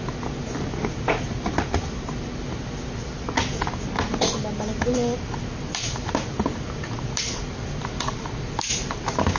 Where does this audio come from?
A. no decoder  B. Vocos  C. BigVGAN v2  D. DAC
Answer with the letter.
A